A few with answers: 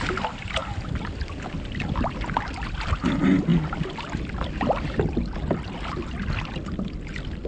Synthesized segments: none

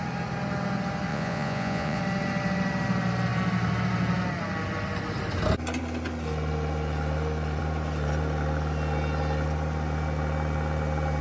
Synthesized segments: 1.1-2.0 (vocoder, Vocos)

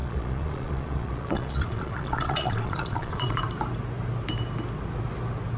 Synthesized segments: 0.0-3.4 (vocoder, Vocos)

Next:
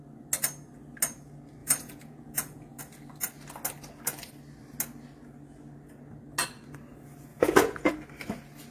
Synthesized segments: 1.6-2.8 (vocoder, Vocos); 7.3-7.9